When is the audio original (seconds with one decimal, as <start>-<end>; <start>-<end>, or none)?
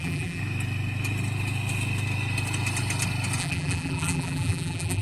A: 0.4-3.4